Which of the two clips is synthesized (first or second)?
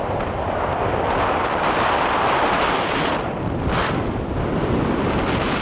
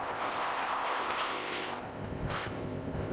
second